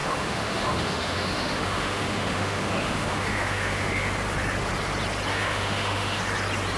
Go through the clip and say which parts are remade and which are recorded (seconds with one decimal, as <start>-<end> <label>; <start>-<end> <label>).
0.0-4.1 remade; 4.1-5.3 recorded; 5.3-6.2 remade; 6.2-6.8 recorded

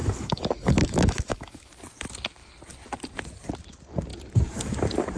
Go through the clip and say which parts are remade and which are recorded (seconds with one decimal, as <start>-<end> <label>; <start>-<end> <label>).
0.0-1.7 remade; 1.7-5.2 recorded

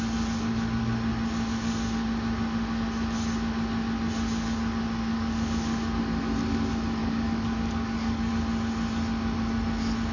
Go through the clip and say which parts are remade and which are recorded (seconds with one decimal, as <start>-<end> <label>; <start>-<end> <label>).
0.0-5.1 recorded; 5.1-6.0 remade; 6.0-7.0 recorded; 7.0-8.3 remade; 8.3-10.1 recorded